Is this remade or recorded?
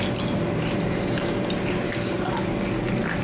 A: recorded